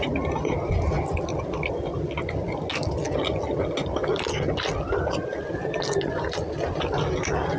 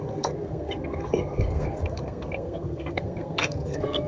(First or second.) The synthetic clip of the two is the second